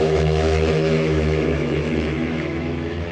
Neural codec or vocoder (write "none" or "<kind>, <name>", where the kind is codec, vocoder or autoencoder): autoencoder, DAC-VAE